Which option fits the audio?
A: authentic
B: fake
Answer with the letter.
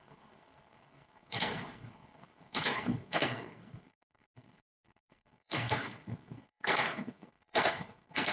B